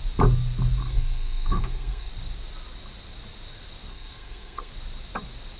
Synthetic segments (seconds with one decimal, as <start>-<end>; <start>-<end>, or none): 0.8-2.1; 3.9-4.7